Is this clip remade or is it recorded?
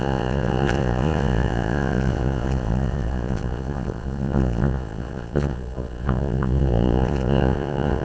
remade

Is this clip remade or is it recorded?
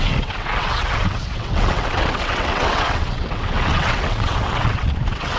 remade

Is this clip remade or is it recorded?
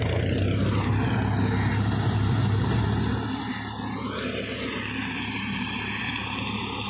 recorded